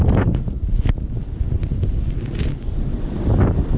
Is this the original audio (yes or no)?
yes